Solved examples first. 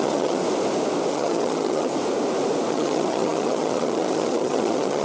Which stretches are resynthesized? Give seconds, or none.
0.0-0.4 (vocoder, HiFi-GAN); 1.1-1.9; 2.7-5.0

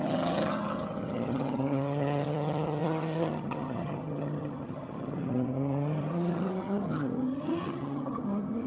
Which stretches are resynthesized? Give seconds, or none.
0.0-8.7 (vocoder, HiFi-GAN)

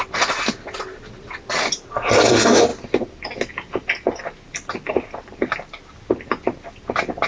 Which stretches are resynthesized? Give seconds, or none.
none

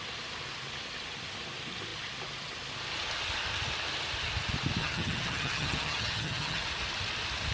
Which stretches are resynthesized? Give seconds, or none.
4.8-6.6 (vocoder, HiFi-GAN)

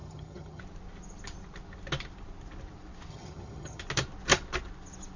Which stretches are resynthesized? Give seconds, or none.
0.0-0.6 (vocoder, HiFi-GAN); 3.1-3.8

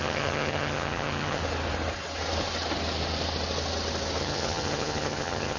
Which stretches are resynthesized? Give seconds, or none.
0.0-1.4 (vocoder, HiFi-GAN); 4.2-5.6

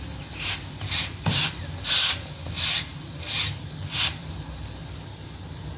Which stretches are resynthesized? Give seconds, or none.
none